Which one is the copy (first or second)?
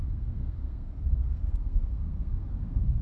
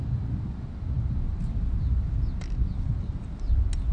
first